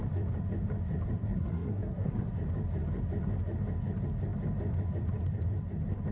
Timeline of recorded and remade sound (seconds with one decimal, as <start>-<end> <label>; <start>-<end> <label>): 0.0-1.2 recorded; 1.2-2.3 remade; 2.3-6.1 recorded